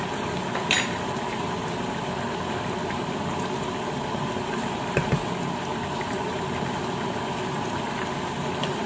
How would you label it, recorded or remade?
recorded